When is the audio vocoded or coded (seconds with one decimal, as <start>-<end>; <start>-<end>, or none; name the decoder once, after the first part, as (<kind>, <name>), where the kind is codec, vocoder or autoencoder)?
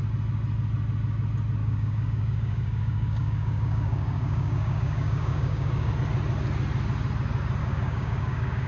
1.6-5.9 (codec, DAC); 7.6-8.7